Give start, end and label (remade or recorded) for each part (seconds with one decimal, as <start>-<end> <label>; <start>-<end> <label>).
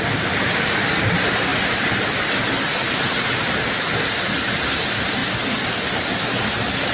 0.0-6.9 recorded